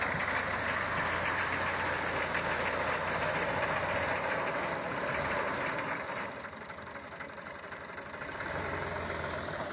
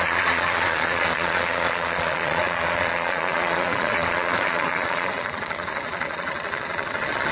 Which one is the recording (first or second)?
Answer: first